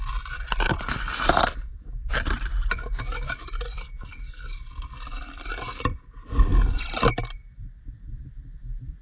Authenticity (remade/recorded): remade